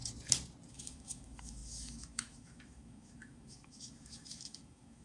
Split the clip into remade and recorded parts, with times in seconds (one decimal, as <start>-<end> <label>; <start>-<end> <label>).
0.0-0.7 recorded; 0.7-5.0 remade